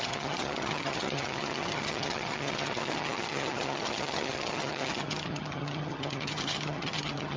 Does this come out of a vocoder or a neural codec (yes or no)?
yes